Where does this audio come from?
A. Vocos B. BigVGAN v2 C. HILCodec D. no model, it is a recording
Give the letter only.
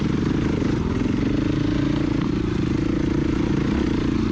D